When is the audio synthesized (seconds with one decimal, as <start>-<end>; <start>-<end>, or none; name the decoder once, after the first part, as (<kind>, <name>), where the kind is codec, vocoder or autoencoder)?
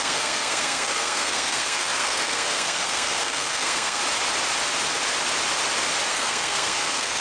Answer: 0.0-4.0 (codec, SNAC); 6.1-7.2